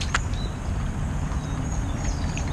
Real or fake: real